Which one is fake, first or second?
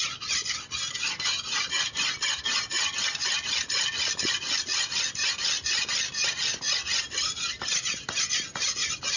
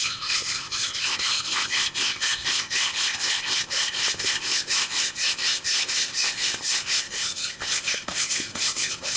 second